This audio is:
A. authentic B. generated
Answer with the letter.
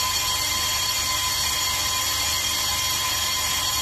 A